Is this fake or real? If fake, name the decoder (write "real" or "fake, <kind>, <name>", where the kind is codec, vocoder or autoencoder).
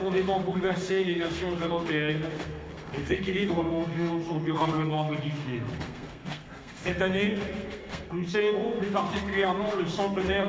fake, codec, SNAC